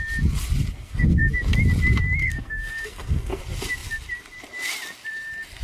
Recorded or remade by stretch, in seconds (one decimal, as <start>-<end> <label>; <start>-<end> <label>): 0.0-0.7 recorded; 0.7-1.2 remade; 1.2-2.2 recorded; 2.2-3.4 remade; 3.4-5.6 recorded